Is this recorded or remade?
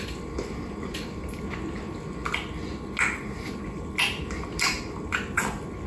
recorded